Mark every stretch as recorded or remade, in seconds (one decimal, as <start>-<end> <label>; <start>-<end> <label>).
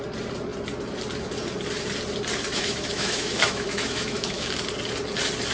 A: 0.0-2.5 recorded; 2.5-4.5 remade; 4.5-5.5 recorded